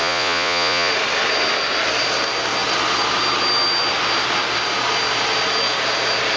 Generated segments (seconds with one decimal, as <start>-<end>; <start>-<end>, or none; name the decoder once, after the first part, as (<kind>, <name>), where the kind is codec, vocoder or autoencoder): 0.0-0.9 (vocoder, Vocos)